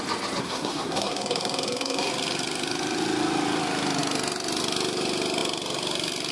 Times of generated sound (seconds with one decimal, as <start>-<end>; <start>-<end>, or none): 0.4-2.1